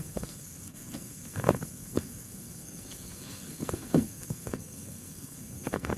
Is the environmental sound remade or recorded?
remade